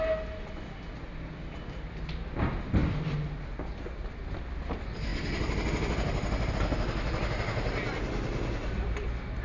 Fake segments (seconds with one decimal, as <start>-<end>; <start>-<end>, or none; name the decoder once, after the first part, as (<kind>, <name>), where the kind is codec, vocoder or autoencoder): none